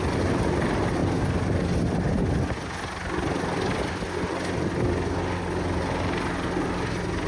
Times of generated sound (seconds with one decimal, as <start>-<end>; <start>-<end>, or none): none